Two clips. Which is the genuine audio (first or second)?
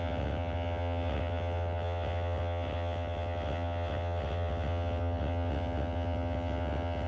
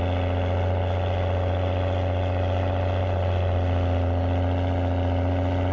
second